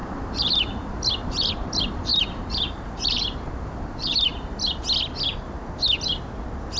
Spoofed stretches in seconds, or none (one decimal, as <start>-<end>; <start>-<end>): 0.0-4.3